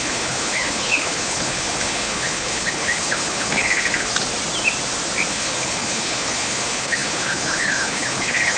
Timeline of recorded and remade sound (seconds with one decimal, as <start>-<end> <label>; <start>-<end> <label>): 0.0-4.1 remade; 4.1-5.3 recorded; 5.3-8.6 remade